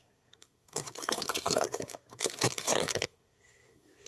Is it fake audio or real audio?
fake